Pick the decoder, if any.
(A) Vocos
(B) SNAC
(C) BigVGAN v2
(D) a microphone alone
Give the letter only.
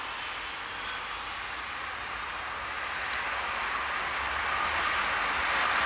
D